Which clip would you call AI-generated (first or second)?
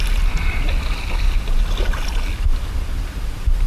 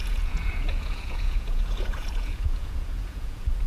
second